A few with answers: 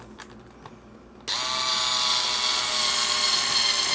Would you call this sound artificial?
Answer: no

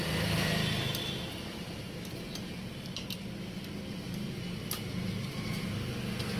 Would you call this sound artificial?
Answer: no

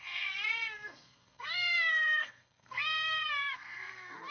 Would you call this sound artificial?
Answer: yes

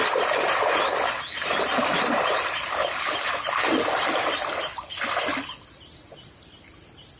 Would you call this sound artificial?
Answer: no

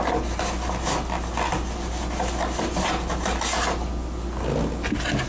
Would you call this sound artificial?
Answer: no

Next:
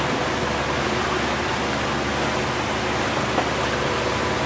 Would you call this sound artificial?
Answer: no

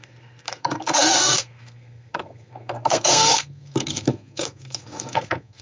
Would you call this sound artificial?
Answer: yes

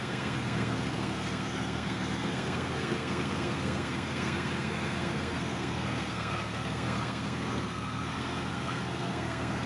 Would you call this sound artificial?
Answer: yes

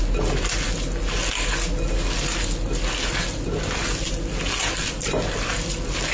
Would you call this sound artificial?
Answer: no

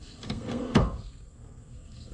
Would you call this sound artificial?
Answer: yes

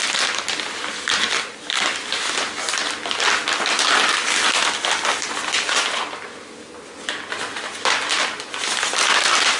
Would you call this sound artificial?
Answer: no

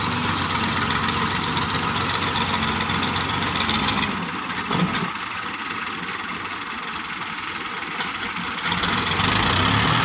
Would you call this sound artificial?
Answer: no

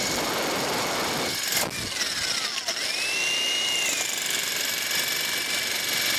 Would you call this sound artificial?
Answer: no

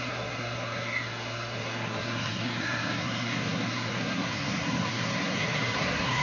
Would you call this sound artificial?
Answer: yes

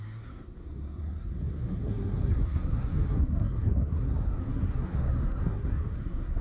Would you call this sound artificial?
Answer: yes